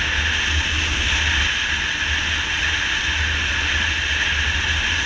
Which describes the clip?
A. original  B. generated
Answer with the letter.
A